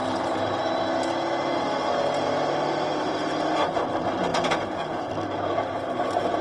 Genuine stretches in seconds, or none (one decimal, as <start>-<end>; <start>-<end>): 0.0-4.3; 5.1-6.4